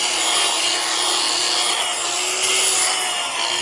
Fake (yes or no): no